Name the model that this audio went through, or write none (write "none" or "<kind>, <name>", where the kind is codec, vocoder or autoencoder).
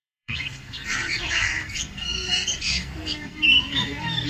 codec, SNAC